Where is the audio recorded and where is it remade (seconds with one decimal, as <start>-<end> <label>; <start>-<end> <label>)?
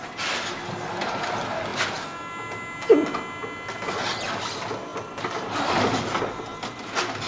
0.0-7.3 recorded